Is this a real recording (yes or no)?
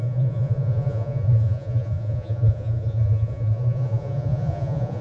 no